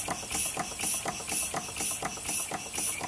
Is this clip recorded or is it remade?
recorded